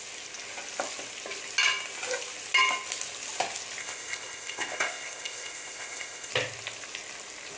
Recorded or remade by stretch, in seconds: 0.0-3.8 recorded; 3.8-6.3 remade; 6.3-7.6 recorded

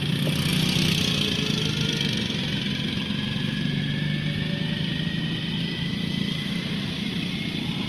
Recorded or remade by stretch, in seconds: 0.0-5.9 recorded; 5.9-7.3 remade; 7.3-7.9 recorded